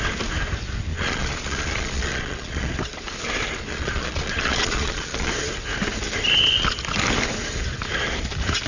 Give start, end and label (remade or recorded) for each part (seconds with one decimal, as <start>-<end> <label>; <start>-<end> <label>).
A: 0.0-0.9 recorded; 0.9-2.7 remade; 2.7-3.7 recorded; 3.7-5.3 remade; 5.3-8.7 recorded